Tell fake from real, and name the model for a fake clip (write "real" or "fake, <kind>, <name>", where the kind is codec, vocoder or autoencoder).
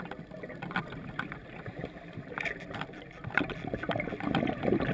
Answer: real